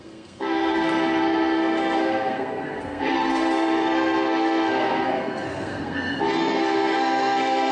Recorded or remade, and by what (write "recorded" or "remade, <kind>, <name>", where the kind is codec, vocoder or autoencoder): remade, codec, SNAC